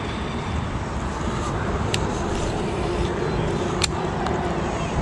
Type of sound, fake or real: fake